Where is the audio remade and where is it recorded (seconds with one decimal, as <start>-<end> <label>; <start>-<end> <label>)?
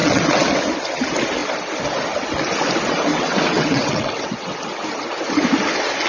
0.0-0.5 remade; 0.5-3.1 recorded; 3.1-4.6 remade; 4.6-6.1 recorded